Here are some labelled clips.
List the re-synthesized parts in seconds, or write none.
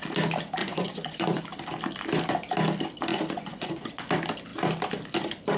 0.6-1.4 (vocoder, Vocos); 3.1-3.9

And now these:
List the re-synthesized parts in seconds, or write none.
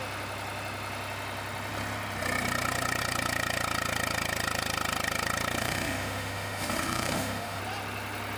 5.6-7.6 (autoencoder, DAC-VAE)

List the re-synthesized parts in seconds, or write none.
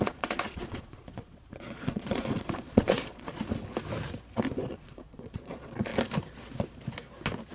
0.0-3.4 (vocoder, Vocos); 4.7-5.9